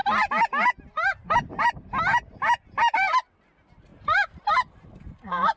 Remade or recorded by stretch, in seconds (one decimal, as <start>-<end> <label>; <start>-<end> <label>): 0.0-5.6 recorded